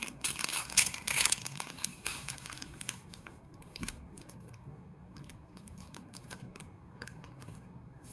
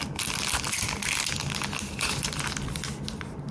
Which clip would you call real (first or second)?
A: second